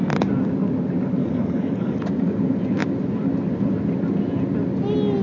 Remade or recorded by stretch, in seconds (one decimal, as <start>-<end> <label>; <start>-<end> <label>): 0.0-1.2 recorded; 1.2-2.0 remade; 2.0-5.2 recorded